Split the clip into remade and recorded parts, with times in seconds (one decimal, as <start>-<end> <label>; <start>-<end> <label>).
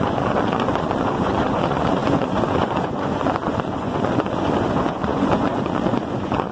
0.0-6.5 remade